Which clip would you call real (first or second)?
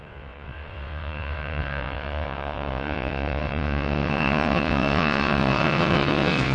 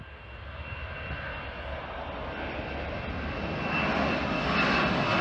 second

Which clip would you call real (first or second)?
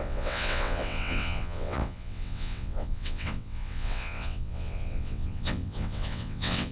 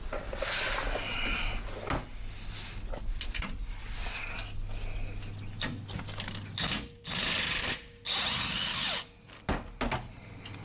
second